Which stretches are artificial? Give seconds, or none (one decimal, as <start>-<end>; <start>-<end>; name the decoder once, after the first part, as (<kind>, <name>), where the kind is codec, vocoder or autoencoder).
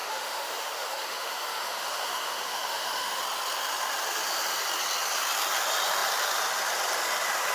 0.0-3.2 (autoencoder, DAC-VAE)